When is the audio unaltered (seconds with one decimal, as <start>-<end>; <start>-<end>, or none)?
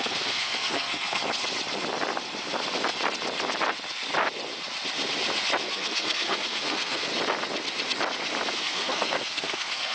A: 1.2-5.6; 7.1-8.5